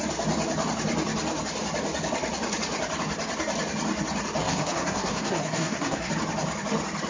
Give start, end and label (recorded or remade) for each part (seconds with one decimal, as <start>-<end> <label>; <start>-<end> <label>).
0.0-4.4 recorded; 4.4-6.1 remade; 6.1-7.1 recorded

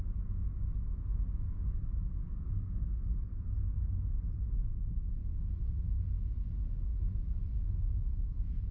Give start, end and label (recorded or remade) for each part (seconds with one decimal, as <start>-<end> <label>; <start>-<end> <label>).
0.0-8.7 recorded